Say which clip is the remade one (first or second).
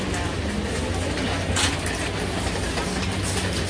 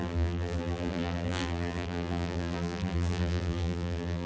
second